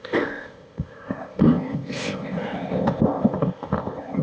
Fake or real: fake